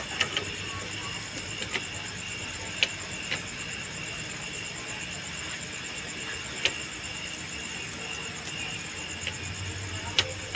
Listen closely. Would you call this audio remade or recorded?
recorded